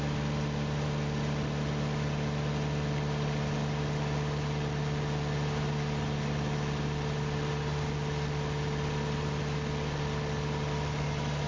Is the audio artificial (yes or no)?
no